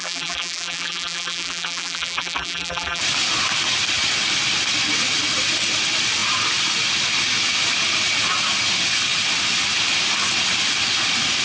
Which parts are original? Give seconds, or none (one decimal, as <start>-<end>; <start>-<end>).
3.0-11.4